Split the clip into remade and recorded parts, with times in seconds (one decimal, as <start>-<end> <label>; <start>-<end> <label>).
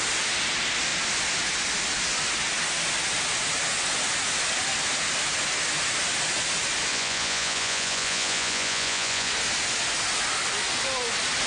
0.0-6.9 recorded; 6.9-9.3 remade; 9.3-11.5 recorded